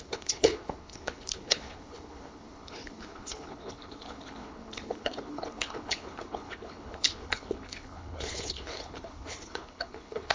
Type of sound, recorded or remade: remade